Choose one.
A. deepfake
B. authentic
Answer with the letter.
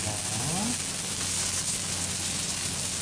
B